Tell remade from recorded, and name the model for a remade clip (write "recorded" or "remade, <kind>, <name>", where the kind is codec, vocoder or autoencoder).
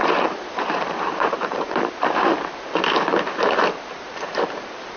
remade, vocoder, BigVGAN v2